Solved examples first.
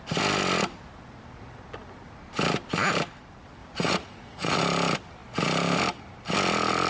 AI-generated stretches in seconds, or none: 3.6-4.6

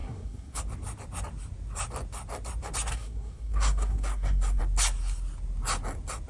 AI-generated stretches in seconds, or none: 0.0-0.6; 2.9-4.6

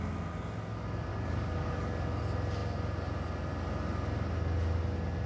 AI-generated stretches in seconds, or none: 1.1-2.2

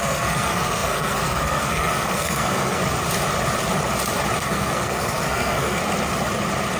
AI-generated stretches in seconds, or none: 0.0-2.8; 4.4-5.8